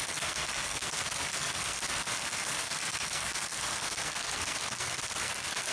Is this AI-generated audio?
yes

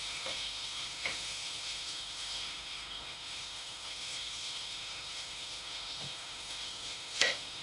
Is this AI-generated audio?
yes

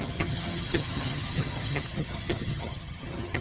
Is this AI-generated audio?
yes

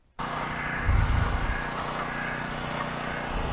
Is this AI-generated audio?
no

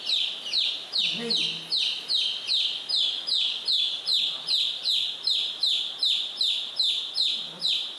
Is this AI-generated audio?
no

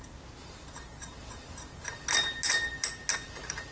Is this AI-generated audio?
no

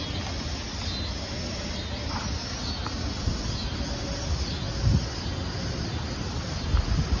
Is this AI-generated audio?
no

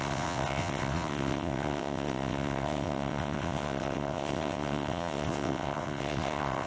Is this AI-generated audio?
yes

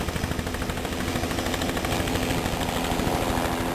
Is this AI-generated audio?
no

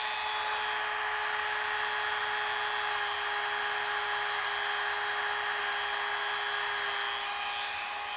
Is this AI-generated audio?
no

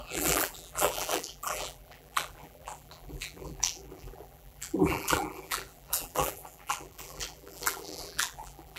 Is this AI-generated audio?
yes